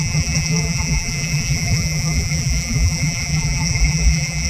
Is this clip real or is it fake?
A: fake